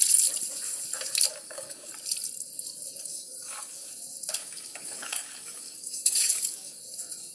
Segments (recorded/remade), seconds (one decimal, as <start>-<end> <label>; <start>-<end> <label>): 0.0-1.3 recorded; 1.3-1.9 remade; 1.9-3.0 recorded; 3.0-3.9 remade; 3.9-4.4 recorded; 4.4-6.8 remade; 6.8-7.3 recorded